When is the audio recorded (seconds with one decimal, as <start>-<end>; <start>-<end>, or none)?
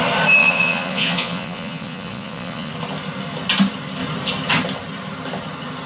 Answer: 0.0-0.4; 2.7-5.9